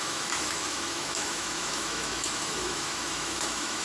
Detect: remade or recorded remade